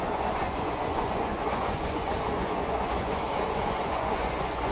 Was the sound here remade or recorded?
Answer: remade